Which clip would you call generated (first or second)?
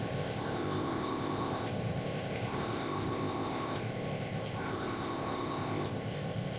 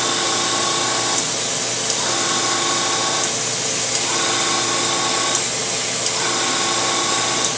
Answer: first